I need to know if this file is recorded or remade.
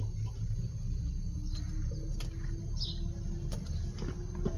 recorded